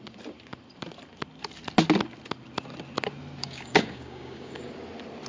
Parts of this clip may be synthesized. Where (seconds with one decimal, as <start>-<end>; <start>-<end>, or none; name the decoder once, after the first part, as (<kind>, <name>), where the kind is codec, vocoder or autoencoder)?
3.4-4.7 (codec, DAC)